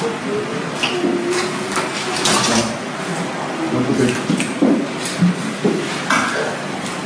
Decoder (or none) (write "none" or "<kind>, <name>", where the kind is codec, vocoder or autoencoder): none